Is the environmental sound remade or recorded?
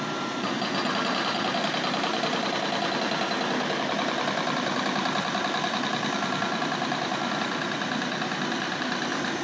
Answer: recorded